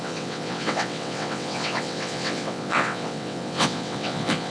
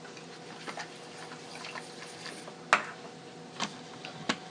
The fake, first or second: first